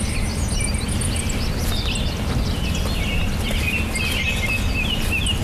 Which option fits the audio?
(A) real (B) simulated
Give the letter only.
A